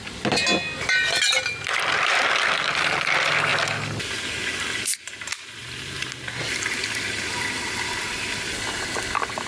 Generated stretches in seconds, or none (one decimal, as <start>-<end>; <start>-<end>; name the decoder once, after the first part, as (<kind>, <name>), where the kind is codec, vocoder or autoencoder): none